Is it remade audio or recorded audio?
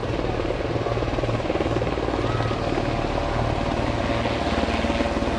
recorded